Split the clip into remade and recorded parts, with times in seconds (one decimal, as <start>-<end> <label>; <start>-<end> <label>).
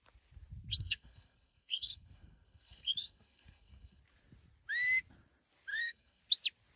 0.0-0.7 recorded; 0.7-4.0 remade; 4.0-5.7 recorded; 5.7-6.2 remade; 6.2-6.8 recorded